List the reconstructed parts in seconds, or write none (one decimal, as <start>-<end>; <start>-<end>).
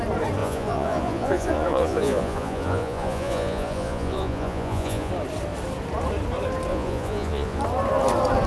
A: 0.4-5.1; 6.7-7.6